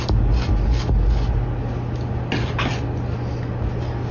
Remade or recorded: recorded